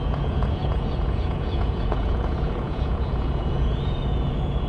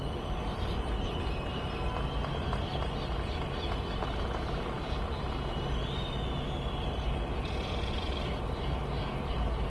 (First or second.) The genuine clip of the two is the second